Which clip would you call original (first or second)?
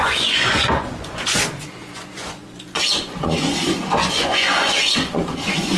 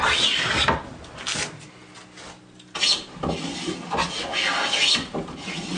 second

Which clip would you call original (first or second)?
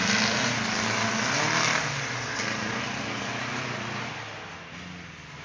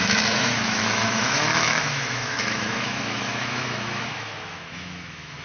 first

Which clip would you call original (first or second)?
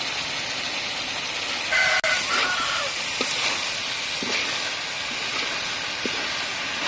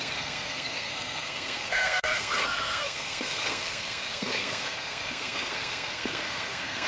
first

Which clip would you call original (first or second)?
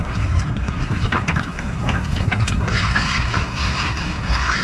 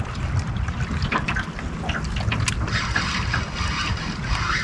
second